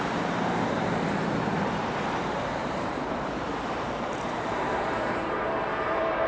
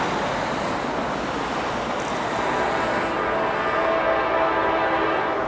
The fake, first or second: first